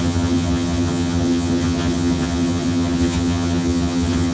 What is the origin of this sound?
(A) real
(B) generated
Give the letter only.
B